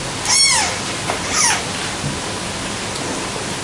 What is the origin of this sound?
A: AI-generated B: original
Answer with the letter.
B